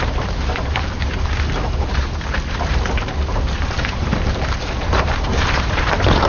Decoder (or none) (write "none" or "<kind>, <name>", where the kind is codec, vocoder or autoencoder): vocoder, BigVGAN v2